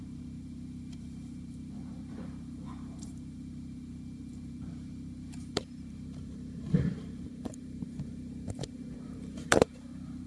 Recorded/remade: remade